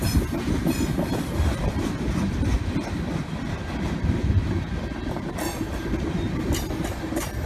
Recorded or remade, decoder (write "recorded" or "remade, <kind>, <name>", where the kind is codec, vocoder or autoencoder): remade, vocoder, BigVGAN v2